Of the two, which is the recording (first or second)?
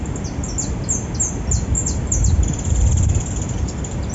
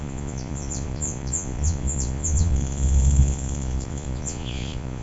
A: first